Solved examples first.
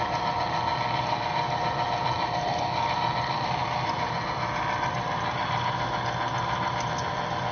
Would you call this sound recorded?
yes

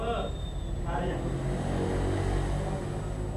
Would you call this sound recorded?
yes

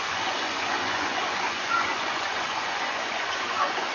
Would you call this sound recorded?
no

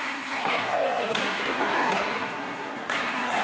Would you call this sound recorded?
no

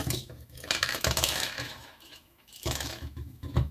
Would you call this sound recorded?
no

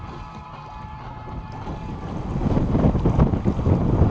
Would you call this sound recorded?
yes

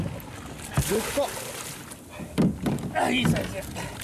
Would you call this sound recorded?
yes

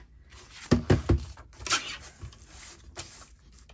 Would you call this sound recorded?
yes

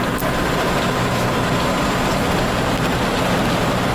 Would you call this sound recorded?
yes